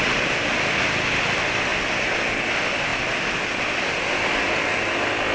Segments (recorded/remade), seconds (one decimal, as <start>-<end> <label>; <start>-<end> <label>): 0.0-5.3 recorded